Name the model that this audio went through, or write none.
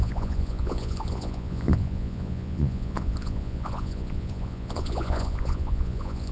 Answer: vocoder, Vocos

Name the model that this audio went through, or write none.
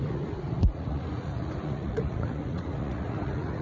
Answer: vocoder, Vocos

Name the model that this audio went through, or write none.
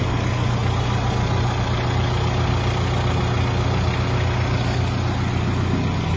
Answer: none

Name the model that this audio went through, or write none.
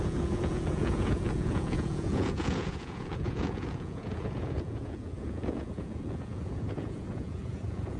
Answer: vocoder, Vocos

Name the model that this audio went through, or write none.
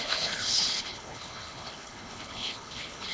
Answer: codec, HILCodec